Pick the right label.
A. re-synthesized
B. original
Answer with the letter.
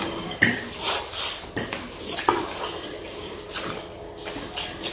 B